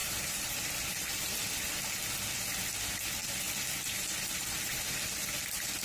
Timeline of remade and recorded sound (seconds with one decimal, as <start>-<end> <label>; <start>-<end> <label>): 0.0-2.1 remade; 2.1-3.2 recorded; 3.2-4.9 remade; 4.9-5.8 recorded